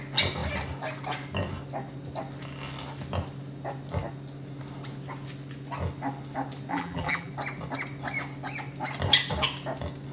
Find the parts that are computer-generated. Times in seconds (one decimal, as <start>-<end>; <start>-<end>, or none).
6.7-7.3